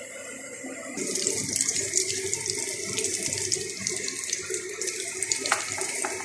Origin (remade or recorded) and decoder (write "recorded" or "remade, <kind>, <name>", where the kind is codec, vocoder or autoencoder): remade, vocoder, BigVGAN v2